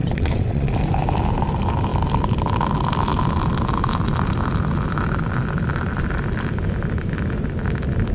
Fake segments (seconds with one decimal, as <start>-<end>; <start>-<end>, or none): 0.0-0.7